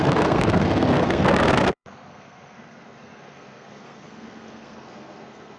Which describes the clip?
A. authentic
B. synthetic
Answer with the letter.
B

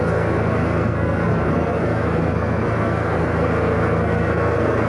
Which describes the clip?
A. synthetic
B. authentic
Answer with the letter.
A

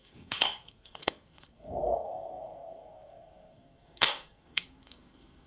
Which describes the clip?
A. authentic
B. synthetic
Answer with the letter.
B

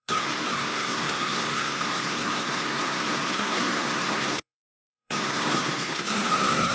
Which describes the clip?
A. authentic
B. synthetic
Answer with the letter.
B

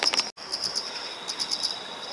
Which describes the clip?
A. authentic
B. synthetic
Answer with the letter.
A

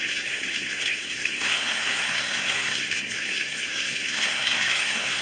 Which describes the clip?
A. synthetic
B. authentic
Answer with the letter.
A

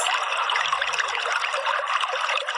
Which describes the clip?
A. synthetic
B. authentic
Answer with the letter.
B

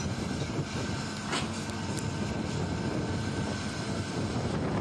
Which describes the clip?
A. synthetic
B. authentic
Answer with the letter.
B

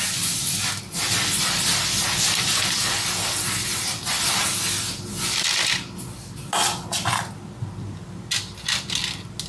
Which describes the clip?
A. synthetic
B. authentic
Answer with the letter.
B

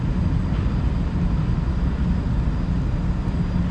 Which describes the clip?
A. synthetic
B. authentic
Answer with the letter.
B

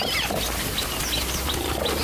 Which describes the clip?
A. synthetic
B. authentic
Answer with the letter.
B